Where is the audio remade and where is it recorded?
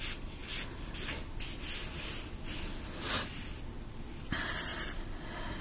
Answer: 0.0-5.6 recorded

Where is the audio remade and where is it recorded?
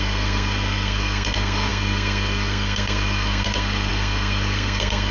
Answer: 0.0-5.1 remade